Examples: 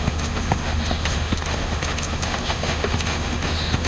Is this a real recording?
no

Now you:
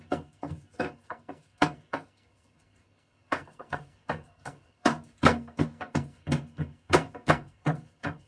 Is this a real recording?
no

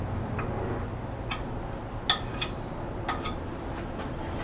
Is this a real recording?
yes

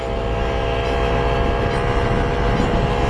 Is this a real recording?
yes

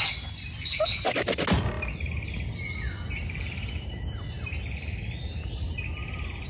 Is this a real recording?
yes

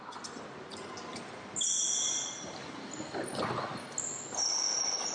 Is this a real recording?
yes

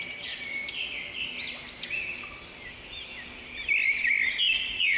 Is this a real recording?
yes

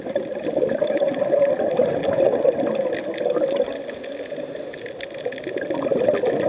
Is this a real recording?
yes